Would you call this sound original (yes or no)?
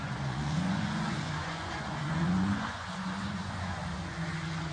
no